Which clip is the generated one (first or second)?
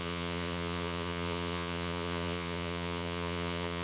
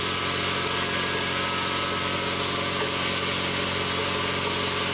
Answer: first